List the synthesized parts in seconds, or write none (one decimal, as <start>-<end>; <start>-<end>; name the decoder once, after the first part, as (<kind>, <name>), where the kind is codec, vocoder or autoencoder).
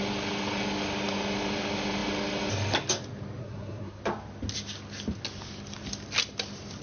3.4-4.0 (codec, SNAC)